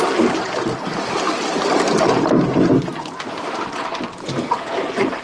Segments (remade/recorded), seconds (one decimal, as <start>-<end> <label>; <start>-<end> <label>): 0.0-0.9 recorded; 0.9-4.0 remade; 4.0-5.2 recorded